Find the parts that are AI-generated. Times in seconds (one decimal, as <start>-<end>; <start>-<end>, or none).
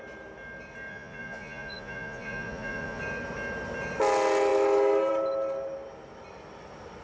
0.9-3.0